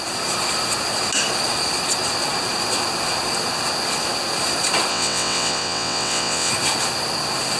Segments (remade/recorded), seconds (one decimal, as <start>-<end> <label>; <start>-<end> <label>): 0.0-4.9 recorded; 4.9-6.5 remade; 6.5-7.6 recorded